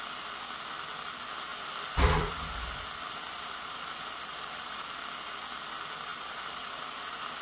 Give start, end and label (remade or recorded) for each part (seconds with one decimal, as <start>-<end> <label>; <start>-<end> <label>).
0.0-1.5 recorded; 1.5-4.6 remade; 4.6-6.1 recorded; 6.1-6.8 remade; 6.8-7.4 recorded